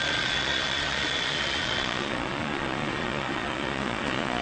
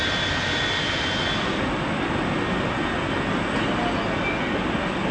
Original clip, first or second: second